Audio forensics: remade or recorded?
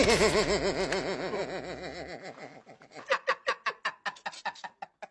recorded